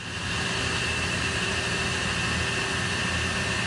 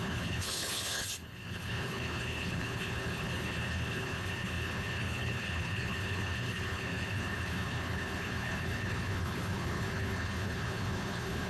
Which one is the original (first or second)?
first